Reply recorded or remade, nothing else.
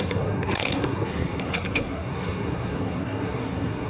remade